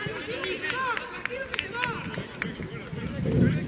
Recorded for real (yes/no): yes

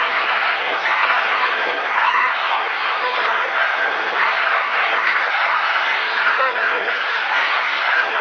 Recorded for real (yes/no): no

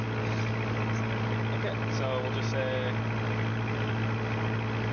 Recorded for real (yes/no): yes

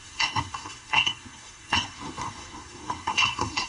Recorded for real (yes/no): no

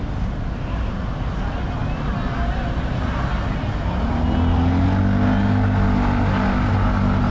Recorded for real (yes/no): yes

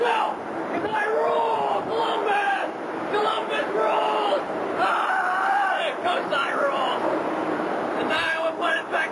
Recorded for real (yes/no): no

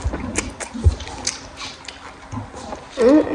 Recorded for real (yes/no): yes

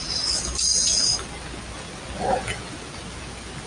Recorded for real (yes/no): yes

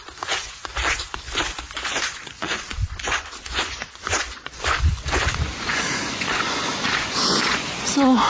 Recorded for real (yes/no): no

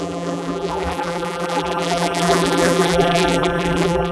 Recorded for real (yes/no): no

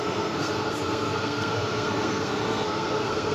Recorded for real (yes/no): no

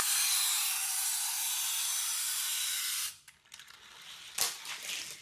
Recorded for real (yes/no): yes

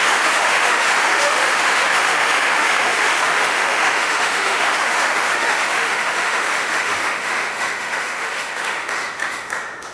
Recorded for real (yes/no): no